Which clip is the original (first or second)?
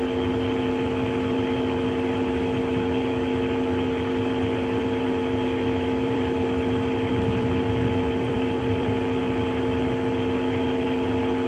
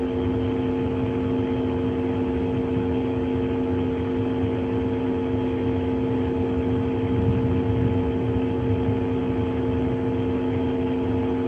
second